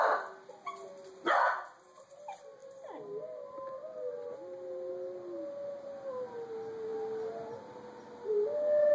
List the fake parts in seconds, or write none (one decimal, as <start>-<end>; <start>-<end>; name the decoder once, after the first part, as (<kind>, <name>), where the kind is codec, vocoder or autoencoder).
none